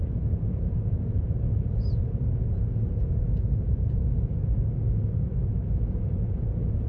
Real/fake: fake